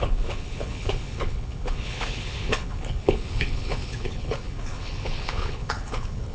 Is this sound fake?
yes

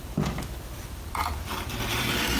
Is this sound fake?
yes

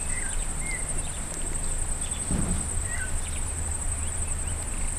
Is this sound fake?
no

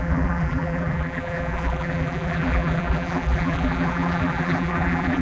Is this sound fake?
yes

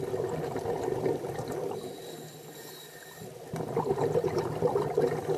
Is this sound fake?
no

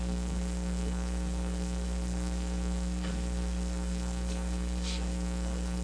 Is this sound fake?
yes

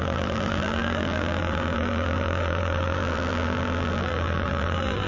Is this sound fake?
yes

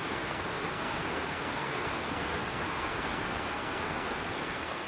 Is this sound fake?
yes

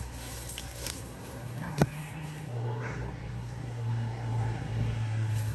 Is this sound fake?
yes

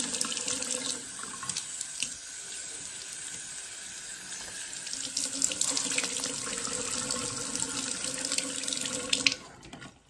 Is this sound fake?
no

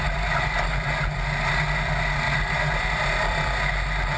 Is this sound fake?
no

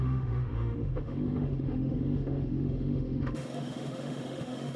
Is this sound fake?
yes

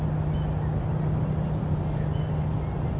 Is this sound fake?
no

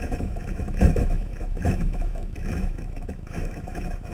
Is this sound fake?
yes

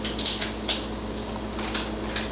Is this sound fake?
no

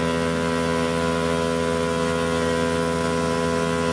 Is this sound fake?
no